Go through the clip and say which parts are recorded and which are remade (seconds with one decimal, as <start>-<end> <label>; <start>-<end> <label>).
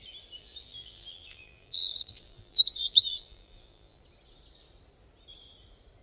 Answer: 0.0-0.4 recorded; 0.4-4.0 remade; 4.0-6.0 recorded